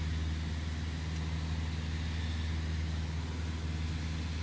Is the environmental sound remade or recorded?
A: recorded